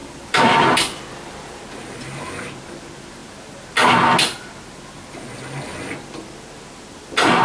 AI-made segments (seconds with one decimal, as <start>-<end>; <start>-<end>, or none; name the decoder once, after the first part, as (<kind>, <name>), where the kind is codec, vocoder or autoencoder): 0.0-2.2 (vocoder, BigVGAN v2)